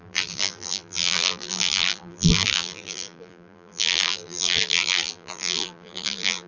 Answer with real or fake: fake